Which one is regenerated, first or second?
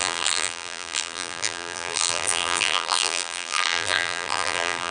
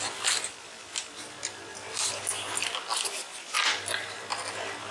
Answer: first